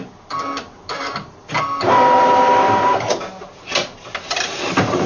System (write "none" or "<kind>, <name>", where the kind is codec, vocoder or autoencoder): none